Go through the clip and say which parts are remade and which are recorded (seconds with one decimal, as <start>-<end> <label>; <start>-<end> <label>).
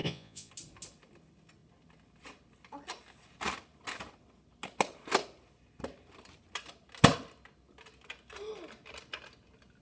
0.0-0.5 remade; 0.5-9.8 recorded